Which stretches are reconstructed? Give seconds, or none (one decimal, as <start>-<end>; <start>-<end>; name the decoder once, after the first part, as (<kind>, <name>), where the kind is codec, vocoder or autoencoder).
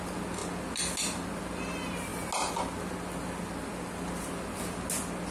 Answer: none